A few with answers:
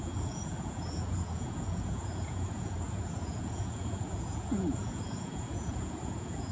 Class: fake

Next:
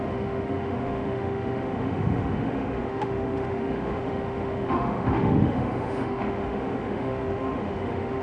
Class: fake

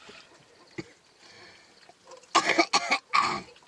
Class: real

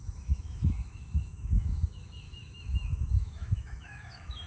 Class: fake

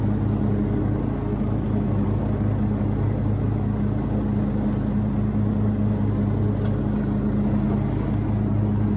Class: real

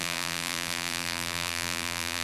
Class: fake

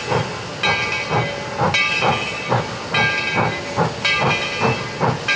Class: real